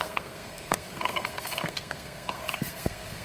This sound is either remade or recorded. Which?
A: remade